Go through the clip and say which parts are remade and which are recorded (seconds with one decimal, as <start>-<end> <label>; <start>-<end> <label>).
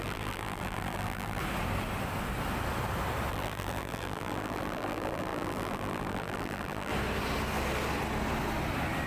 0.0-1.4 remade; 1.4-3.3 recorded; 3.3-6.9 remade; 6.9-9.1 recorded